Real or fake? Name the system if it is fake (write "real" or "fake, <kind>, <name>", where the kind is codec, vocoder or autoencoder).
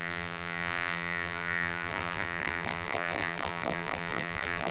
fake, vocoder, BigVGAN v2